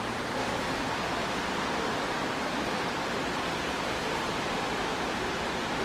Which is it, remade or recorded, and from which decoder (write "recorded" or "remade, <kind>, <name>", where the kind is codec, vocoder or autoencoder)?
remade, vocoder, BigVGAN v2